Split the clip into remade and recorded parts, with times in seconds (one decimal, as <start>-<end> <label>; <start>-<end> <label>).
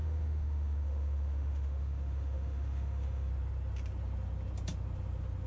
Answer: 0.0-3.3 remade; 3.3-5.5 recorded